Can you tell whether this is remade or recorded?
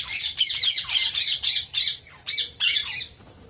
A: remade